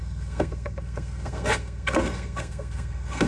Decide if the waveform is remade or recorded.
remade